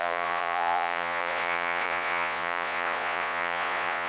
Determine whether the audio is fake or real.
fake